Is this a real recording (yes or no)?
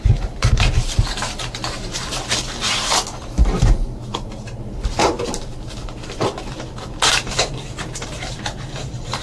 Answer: no